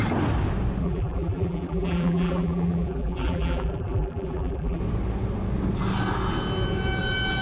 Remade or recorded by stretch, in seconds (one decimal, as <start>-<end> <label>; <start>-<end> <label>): 0.0-0.8 recorded; 0.8-4.8 remade; 4.8-7.4 recorded